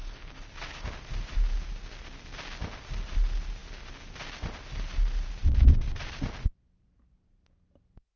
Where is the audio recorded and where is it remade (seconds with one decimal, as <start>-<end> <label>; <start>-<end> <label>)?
0.0-0.9 remade; 0.9-8.2 recorded